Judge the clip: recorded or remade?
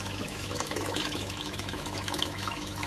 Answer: remade